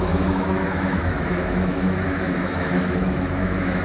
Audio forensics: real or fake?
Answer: fake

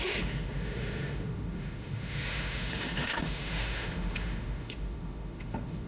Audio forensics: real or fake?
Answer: fake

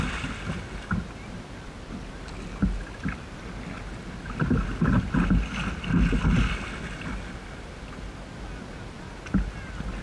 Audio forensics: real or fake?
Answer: real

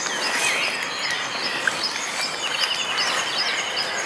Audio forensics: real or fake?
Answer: real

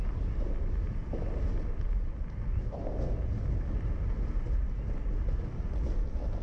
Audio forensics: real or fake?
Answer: real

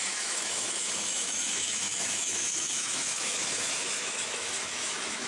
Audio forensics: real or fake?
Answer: fake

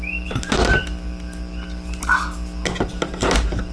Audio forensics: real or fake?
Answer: real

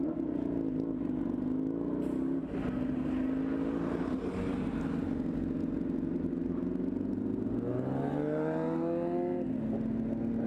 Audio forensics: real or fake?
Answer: real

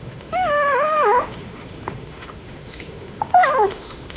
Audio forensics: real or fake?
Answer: fake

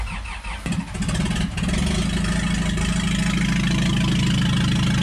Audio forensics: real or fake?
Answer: real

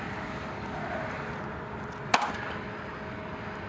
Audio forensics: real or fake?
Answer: real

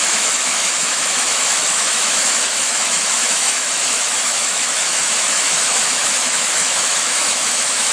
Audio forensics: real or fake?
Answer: fake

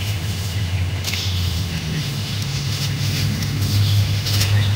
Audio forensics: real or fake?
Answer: fake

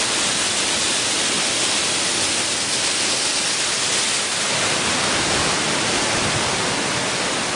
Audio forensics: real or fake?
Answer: real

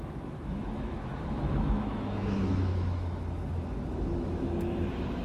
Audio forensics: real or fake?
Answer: fake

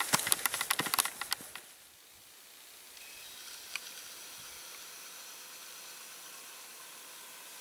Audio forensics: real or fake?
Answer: real